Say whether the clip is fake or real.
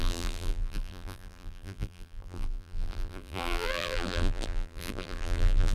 fake